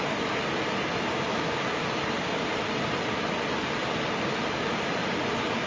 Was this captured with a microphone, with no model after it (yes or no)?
yes